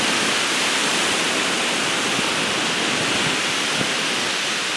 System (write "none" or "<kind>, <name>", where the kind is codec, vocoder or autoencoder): none